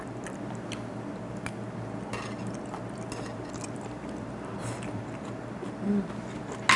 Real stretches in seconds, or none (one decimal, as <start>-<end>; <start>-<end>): 0.0-3.3; 5.3-6.8